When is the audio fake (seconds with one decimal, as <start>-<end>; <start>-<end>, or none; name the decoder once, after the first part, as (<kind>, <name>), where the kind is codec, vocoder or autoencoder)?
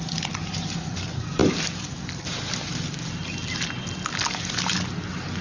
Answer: none